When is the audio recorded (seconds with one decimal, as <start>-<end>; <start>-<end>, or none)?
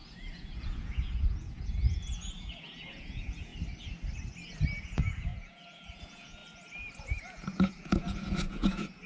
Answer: 3.5-4.8; 6.4-7.2